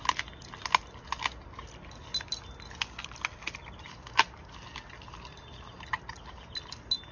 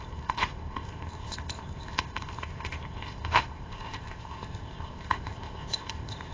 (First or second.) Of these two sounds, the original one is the first